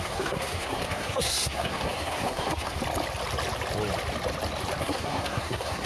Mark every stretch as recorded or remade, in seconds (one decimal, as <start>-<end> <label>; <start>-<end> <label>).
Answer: 0.0-2.8 remade; 2.8-4.8 recorded; 4.8-5.9 remade